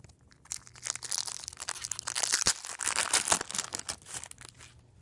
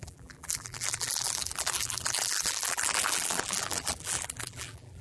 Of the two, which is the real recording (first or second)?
first